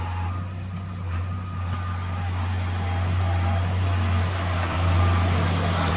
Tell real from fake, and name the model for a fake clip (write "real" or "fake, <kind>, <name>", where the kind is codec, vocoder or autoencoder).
real